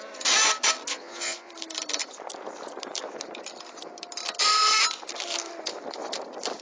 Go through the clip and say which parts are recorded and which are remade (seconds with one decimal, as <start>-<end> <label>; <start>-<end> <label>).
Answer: 0.0-0.9 recorded; 0.9-1.5 remade; 1.5-6.6 recorded